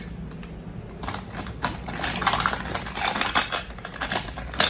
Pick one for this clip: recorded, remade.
recorded